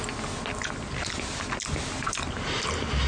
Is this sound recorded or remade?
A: recorded